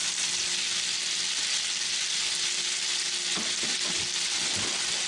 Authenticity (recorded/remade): recorded